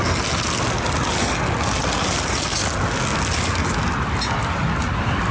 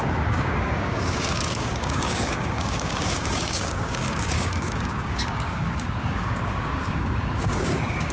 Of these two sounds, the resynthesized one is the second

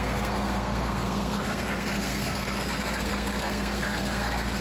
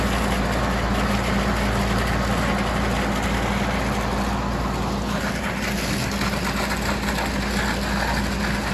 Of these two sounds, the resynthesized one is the first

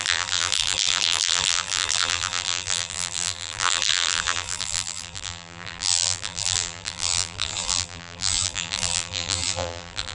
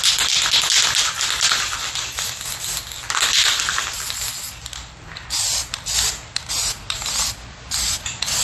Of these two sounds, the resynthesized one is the first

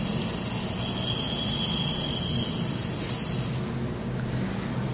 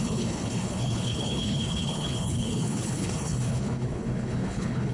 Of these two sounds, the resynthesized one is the second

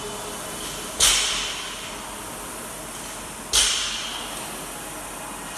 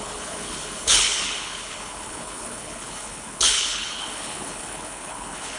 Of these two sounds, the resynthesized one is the second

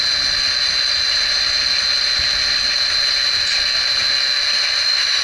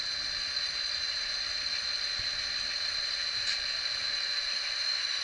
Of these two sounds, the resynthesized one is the second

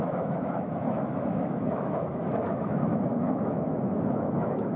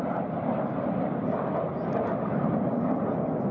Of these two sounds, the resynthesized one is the first